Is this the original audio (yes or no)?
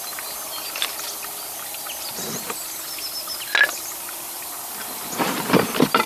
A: yes